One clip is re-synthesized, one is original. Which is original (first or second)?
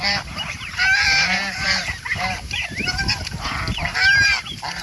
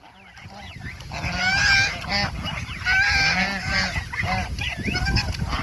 second